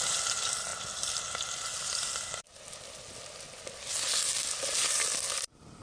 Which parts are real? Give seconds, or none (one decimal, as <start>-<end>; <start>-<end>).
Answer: 0.0-5.8